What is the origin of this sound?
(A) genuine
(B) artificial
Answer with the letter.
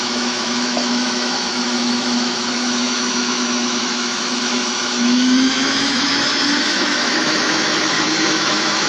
B